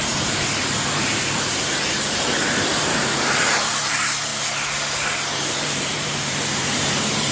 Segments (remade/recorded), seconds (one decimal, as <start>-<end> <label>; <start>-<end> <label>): 0.0-4.3 remade; 4.3-5.1 recorded; 5.1-7.3 remade